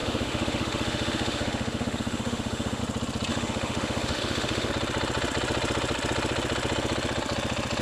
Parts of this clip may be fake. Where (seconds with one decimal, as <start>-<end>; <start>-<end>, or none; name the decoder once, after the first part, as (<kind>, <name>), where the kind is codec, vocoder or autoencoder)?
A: 0.0-2.8 (autoencoder, DAC-VAE); 3.3-4.7